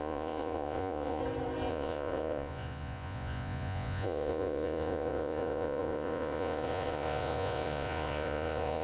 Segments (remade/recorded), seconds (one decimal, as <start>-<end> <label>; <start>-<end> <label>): 0.0-1.2 remade; 1.2-1.7 recorded; 1.7-8.8 remade